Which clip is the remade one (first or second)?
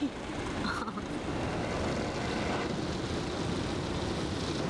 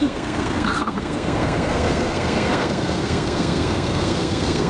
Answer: second